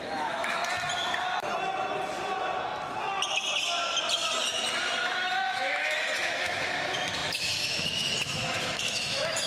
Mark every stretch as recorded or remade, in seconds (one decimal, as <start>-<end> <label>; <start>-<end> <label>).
0.0-0.6 remade; 0.6-5.0 recorded; 5.0-9.5 remade